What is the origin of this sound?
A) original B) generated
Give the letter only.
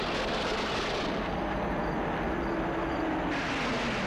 A